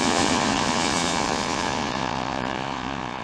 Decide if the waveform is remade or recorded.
remade